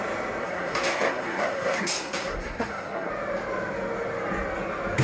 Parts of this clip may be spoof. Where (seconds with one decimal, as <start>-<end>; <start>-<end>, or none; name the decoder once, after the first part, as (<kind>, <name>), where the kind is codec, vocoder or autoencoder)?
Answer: 0.4-3.1 (codec, SNAC)